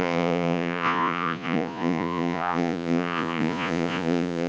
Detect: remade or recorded remade